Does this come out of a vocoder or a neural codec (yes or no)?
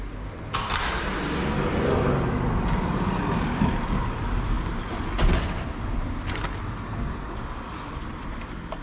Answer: no